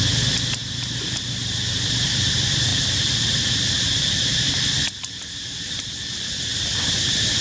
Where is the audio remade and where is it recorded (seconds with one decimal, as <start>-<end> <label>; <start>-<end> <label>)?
0.0-2.7 recorded; 2.7-5.1 remade; 5.1-6.5 recorded; 6.5-7.4 remade

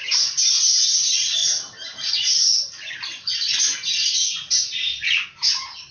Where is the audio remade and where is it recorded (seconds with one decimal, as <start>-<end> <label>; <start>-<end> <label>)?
0.0-1.4 recorded; 1.4-2.1 remade; 2.1-5.9 recorded

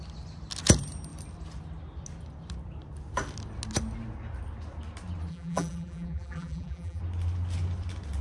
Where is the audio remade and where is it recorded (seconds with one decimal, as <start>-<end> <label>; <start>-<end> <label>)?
0.0-5.3 recorded; 5.3-7.0 remade; 7.0-8.2 recorded

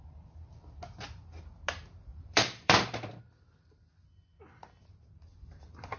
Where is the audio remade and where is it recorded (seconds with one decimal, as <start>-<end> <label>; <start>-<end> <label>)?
0.0-2.1 recorded; 2.1-3.2 remade; 3.2-5.3 recorded; 5.3-6.0 remade

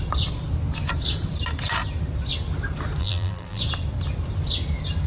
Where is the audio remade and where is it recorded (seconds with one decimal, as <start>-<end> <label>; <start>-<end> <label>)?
0.0-3.0 recorded; 3.0-3.6 remade; 3.6-5.1 recorded